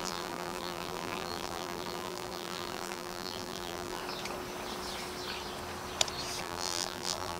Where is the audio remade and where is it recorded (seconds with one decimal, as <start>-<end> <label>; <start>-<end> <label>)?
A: 0.0-4.0 remade; 4.0-6.4 recorded; 6.4-7.4 remade